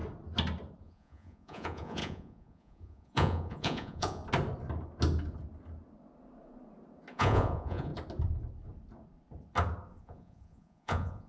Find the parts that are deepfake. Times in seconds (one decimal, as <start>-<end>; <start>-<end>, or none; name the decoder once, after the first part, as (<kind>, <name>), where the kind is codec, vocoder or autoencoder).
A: 0.8-4.2 (vocoder, Vocos); 7.1-7.9; 10.0-11.3